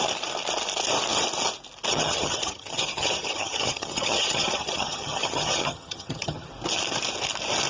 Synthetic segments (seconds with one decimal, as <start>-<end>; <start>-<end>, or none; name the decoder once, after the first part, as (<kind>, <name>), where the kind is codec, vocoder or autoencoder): 1.9-6.5 (vocoder, HiFi-GAN)